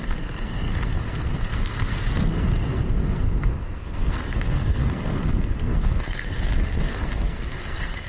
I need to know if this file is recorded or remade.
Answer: remade